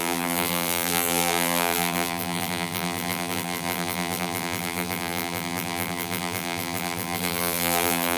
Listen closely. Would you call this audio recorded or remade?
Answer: remade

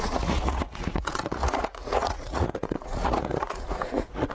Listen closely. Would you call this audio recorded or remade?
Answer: remade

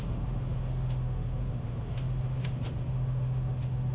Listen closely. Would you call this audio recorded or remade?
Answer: remade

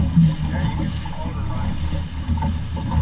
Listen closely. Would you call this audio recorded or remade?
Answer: recorded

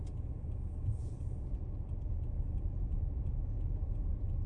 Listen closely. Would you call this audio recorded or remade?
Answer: remade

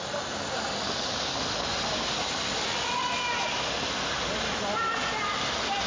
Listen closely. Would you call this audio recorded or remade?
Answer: recorded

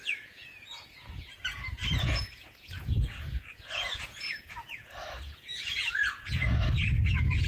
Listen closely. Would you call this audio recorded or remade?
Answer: remade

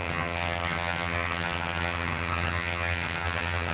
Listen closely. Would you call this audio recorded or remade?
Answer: remade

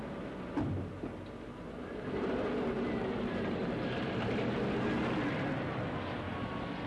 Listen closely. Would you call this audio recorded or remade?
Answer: recorded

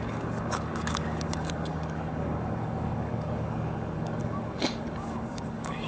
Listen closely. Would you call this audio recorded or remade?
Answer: remade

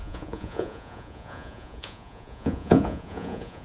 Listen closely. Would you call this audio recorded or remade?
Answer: remade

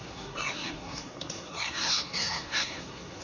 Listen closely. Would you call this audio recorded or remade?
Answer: remade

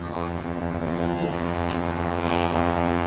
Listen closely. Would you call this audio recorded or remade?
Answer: remade